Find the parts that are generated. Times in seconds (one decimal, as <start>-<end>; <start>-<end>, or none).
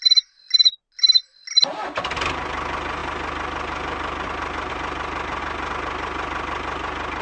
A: none